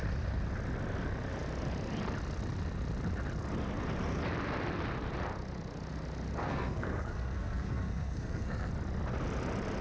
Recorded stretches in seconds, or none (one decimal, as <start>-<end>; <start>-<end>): 0.0-6.4; 8.7-9.8